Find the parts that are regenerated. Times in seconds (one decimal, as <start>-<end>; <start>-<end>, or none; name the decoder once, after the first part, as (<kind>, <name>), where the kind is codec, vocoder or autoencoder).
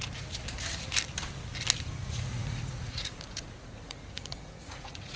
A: 2.0-5.2 (vocoder, Vocos)